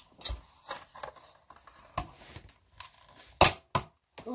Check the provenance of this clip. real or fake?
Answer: real